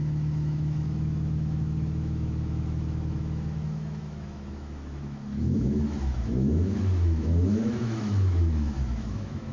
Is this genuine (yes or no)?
no